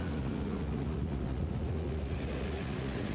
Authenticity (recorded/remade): remade